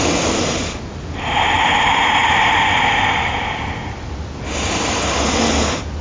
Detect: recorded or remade recorded